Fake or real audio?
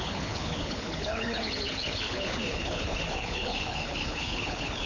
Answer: fake